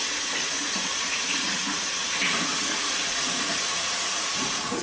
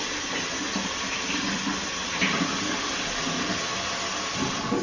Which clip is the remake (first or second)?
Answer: first